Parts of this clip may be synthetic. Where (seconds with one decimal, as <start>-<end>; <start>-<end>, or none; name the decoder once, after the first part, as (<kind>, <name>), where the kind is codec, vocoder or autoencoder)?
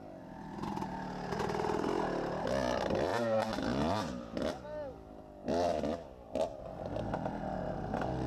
none